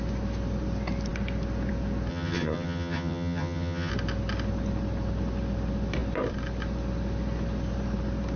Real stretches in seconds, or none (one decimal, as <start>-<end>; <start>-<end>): 0.0-2.1; 3.9-8.4